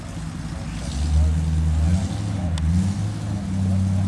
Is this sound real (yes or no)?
yes